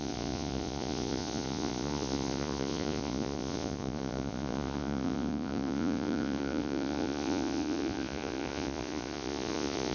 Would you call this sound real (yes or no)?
no